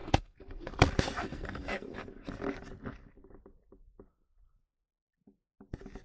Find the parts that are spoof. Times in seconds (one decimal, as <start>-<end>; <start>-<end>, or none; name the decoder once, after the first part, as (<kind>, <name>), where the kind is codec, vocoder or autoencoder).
0.0-0.7 (codec, SNAC); 1.2-2.3